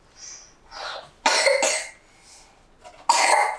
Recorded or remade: recorded